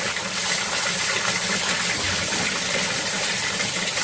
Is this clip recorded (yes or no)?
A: yes